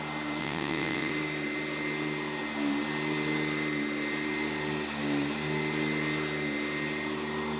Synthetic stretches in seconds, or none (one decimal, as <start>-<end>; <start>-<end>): 0.4-1.1